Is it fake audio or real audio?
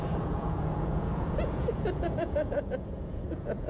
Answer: fake